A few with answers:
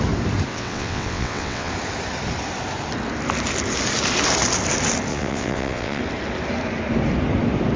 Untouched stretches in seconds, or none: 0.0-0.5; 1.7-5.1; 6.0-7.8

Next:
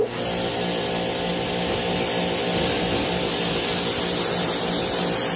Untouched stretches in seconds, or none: 0.0-5.4

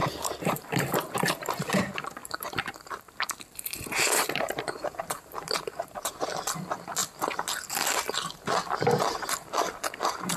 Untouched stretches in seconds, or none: 1.8-2.2; 6.1-10.4

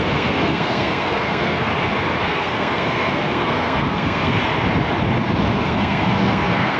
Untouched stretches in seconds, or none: 1.7-2.2; 4.4-5.4

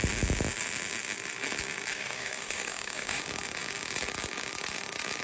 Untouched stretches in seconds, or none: 0.0-1.9; 3.2-5.2

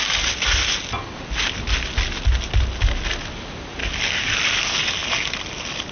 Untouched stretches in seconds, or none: 0.0-3.8; 4.4-5.9

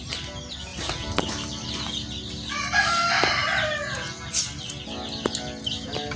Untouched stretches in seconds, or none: 0.0-0.7; 4.4-6.2